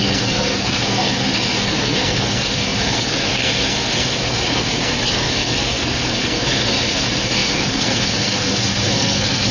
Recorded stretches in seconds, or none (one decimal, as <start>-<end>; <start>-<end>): none